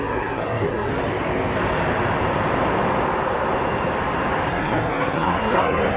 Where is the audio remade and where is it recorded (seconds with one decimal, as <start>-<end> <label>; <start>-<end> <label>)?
0.0-0.9 remade; 0.9-4.5 recorded; 4.5-6.0 remade

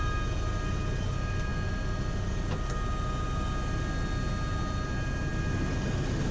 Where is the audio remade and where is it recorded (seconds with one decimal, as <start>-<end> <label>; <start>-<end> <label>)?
0.0-6.3 recorded

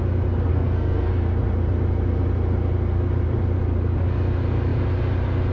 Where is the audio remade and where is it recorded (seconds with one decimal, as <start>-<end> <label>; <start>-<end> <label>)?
0.0-0.5 recorded; 0.5-1.1 remade; 1.1-5.5 recorded